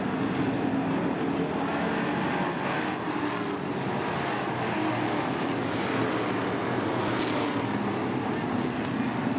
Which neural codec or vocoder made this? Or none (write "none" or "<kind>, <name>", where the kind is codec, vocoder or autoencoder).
none